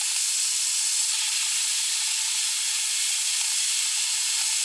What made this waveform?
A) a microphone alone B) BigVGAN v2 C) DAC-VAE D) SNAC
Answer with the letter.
A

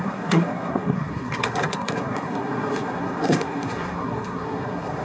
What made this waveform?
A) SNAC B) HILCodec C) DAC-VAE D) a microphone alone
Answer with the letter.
A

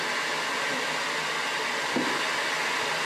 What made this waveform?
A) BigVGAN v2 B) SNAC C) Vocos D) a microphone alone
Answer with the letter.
D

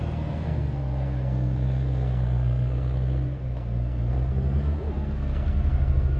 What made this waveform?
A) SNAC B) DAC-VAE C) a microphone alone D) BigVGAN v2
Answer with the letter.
A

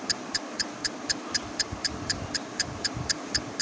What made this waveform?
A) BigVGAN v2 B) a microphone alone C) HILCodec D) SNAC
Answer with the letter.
B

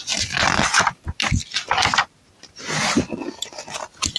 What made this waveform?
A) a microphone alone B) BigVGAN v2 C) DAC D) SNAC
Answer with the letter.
A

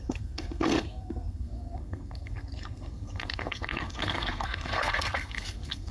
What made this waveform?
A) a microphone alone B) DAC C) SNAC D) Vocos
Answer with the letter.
C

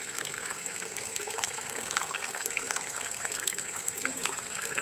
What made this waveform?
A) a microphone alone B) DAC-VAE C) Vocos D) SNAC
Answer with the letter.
D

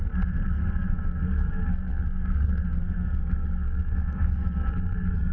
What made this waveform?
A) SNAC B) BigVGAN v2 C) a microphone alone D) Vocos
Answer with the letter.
A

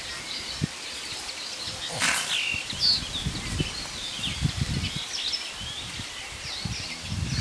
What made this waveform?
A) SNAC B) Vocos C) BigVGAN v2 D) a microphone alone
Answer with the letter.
D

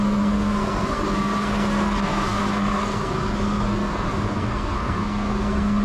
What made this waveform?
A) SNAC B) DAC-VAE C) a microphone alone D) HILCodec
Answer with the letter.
A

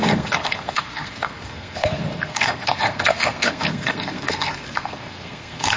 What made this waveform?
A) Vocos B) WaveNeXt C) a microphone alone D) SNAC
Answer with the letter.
D